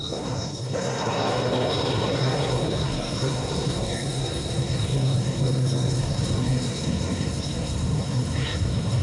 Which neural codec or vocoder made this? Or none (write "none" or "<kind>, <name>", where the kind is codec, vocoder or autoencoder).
codec, SNAC